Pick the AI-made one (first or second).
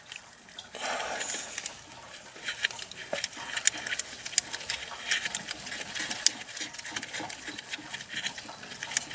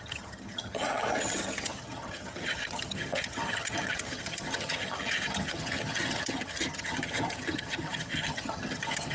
second